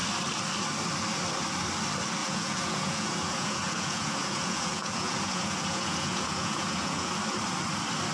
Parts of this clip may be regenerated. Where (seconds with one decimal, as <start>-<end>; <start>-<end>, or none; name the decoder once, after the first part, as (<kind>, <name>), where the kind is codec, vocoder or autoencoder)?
2.2-7.1 (vocoder, Vocos)